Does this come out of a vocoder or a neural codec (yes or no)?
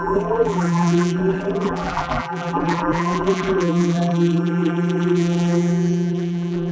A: yes